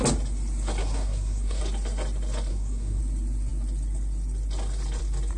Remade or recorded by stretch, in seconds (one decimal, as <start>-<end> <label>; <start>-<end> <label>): 0.0-0.8 recorded; 0.8-1.6 remade; 1.6-2.5 recorded; 2.5-3.0 remade; 3.0-5.4 recorded